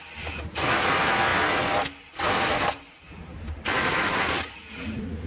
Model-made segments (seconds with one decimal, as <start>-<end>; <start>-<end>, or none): none